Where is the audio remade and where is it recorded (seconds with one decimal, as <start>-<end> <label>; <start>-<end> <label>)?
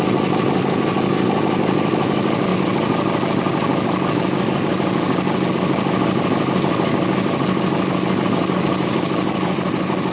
0.0-10.1 recorded